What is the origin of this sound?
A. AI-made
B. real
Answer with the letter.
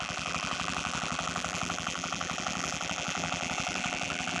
A